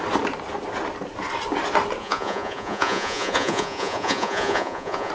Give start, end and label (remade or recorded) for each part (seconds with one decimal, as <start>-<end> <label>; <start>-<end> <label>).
0.0-2.0 recorded; 2.0-5.1 remade